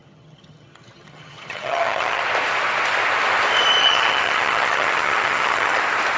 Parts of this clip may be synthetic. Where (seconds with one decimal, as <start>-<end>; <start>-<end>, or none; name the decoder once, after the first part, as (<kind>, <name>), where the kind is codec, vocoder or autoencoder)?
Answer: 0.0-2.2 (vocoder, HiFi-GAN); 3.8-5.8